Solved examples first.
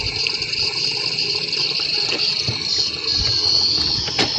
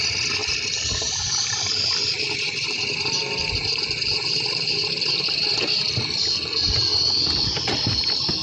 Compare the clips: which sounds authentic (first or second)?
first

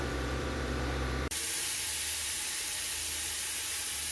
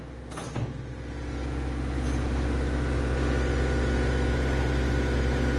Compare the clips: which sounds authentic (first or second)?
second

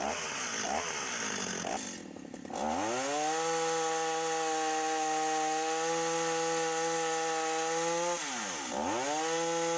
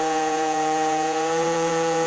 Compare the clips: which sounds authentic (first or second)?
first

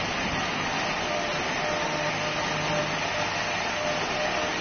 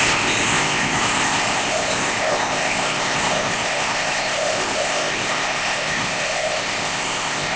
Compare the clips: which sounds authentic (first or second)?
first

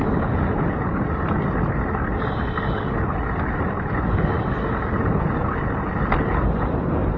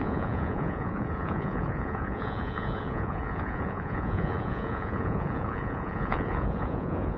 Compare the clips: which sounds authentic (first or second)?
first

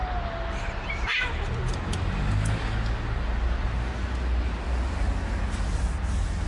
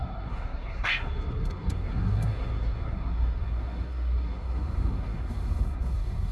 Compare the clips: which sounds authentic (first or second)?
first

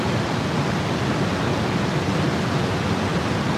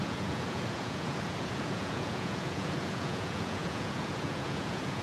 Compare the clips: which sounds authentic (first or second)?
first